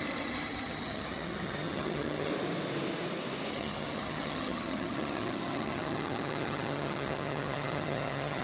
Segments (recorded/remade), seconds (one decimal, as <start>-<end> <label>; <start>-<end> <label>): 0.0-2.3 remade; 2.3-3.5 recorded; 3.5-8.4 remade